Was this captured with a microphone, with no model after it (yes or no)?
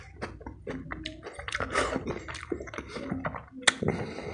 yes